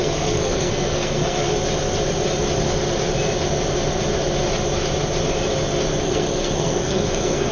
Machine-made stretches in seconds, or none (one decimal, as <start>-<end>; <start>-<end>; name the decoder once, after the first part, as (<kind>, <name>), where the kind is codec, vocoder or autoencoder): 0.0-1.5 (codec, SNAC); 6.0-7.5